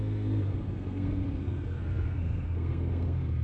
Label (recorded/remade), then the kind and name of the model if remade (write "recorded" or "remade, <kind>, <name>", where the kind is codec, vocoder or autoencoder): remade, codec, SNAC